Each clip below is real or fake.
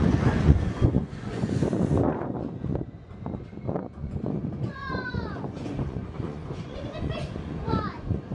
fake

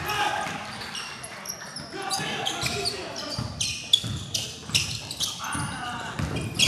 real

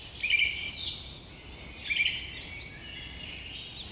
real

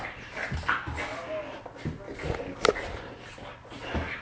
real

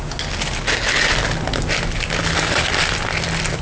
real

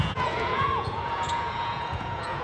fake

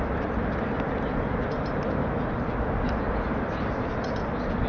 real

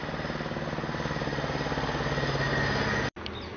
real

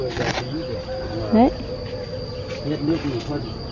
real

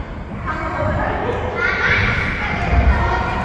real